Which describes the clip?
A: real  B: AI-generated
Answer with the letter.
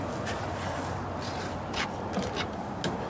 A